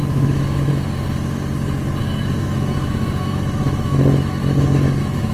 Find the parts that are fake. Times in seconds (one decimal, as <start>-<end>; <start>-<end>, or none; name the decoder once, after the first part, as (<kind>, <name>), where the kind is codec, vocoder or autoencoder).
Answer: 0.0-0.7 (autoencoder, DAC-VAE); 2.0-5.3

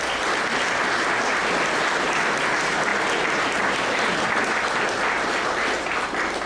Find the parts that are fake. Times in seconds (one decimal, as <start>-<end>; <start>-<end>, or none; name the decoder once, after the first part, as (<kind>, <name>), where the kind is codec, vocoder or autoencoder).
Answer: none

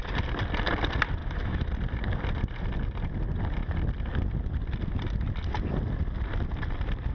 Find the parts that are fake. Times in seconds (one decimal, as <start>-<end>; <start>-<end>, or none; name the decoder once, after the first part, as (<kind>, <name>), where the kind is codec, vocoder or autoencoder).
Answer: 1.2-1.7 (autoencoder, DAC-VAE)

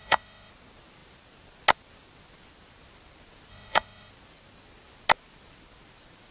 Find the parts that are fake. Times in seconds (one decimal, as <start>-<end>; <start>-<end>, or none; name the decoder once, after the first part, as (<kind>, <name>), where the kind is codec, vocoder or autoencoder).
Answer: 0.0-0.5 (autoencoder, DAC-VAE); 3.5-4.1

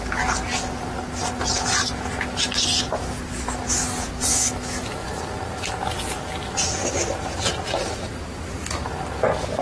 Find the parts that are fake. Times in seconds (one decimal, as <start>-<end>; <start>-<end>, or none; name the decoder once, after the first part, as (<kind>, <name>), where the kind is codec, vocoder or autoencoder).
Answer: 4.3-5.2 (autoencoder, DAC-VAE)

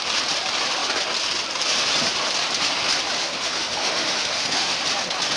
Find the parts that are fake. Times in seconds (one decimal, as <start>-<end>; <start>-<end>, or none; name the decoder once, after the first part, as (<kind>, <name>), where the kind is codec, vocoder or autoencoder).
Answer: 3.2-4.8 (autoencoder, DAC-VAE)

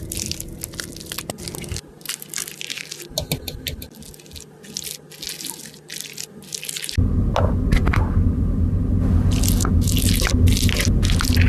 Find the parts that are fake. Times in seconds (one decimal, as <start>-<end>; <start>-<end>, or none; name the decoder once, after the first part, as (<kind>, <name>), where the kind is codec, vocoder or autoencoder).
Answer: none

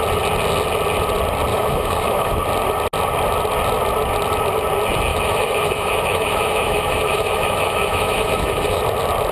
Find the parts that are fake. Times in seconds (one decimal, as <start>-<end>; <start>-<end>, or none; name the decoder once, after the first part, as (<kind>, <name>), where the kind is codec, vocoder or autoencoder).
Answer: 1.5-2.3 (autoencoder, DAC-VAE); 5.1-8.8